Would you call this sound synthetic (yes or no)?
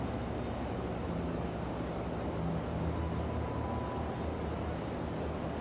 no